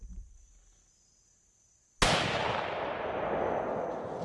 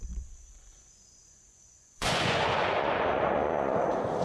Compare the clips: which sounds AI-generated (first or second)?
second